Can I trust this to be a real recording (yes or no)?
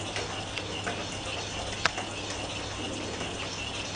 yes